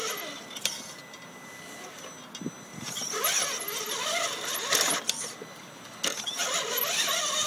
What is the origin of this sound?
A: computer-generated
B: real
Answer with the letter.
B